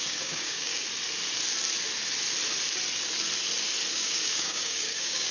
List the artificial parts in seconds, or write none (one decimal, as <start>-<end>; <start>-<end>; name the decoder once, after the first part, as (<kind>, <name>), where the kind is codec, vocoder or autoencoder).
0.0-0.7 (codec, DAC); 3.9-5.3